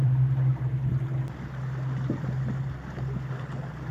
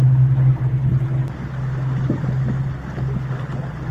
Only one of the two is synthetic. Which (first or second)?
first